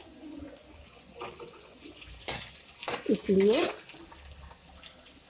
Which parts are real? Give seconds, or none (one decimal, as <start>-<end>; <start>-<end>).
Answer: 2.6-5.3